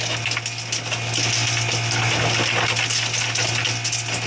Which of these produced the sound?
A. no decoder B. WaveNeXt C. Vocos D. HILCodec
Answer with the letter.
A